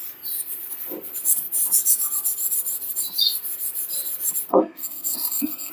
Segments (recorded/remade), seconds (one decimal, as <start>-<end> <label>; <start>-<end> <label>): 0.0-4.5 recorded; 4.5-5.7 remade